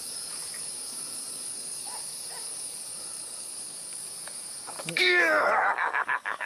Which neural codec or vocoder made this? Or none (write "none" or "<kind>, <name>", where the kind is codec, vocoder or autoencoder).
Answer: codec, DAC